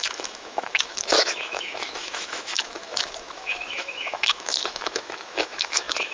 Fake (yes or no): yes